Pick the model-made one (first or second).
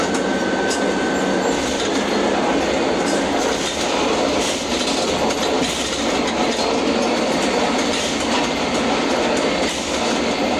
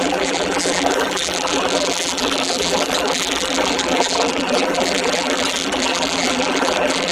second